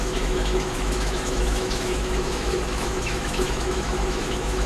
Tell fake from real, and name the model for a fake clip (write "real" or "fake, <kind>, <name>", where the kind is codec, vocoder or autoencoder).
fake, autoencoder, DAC-VAE